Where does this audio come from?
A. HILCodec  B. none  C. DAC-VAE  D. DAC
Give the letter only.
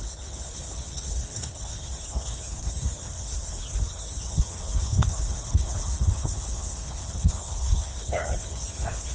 A